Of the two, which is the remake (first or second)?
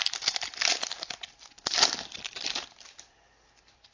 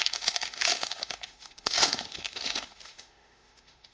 second